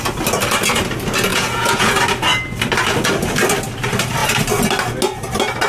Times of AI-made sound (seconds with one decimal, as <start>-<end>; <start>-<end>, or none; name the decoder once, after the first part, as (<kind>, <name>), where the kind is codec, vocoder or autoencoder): 1.3-1.9 (vocoder, Vocos)